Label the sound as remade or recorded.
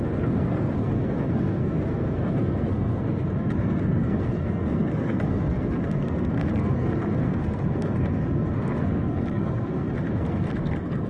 remade